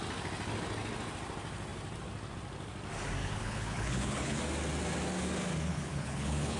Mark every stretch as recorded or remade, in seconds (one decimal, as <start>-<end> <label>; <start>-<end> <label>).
0.0-3.2 recorded; 3.2-4.4 remade; 4.4-5.7 recorded; 5.7-6.6 remade